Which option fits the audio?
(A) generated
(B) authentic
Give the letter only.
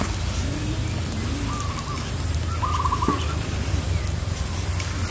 B